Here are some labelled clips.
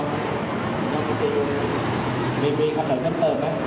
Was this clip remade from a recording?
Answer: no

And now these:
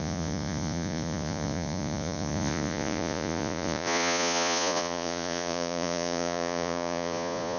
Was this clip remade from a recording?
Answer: yes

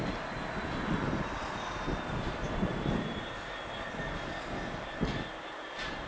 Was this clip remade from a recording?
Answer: no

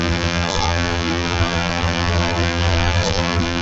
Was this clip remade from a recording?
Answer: yes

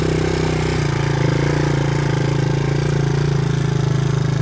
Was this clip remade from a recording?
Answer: no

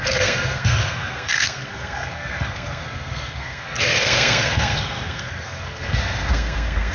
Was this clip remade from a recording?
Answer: yes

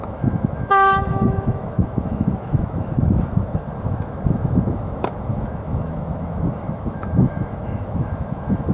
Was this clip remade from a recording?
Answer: yes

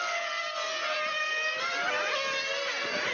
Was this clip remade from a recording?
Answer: no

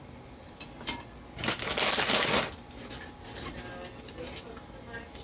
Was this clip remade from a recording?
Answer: no